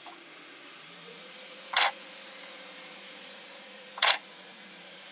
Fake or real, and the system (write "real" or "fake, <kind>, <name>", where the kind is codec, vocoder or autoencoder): fake, vocoder, Vocos